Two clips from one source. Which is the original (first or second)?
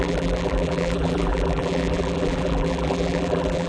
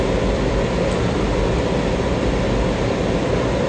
second